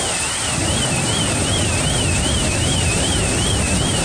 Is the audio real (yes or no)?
yes